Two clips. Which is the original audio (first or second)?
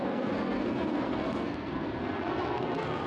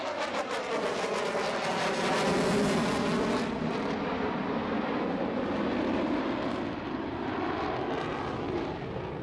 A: second